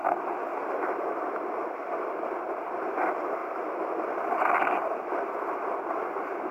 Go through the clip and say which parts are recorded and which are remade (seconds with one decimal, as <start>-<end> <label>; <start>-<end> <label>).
0.0-6.5 recorded